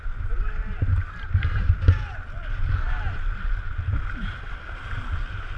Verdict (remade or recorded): recorded